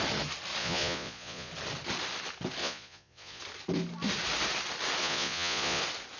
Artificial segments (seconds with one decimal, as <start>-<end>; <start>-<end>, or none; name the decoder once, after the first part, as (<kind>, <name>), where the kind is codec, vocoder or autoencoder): 0.6-1.5 (vocoder, Vocos); 2.6-3.4; 5.0-5.8